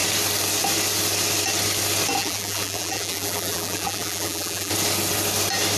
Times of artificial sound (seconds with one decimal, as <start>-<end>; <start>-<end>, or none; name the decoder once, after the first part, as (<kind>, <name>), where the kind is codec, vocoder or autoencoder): 2.2-4.7 (vocoder, BigVGAN v2)